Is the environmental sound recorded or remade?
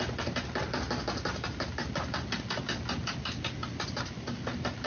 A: recorded